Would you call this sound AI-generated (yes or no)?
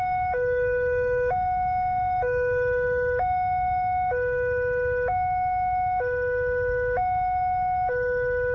yes